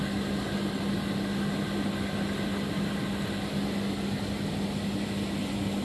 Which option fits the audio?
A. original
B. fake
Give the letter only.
A